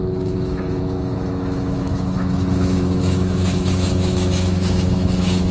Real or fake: fake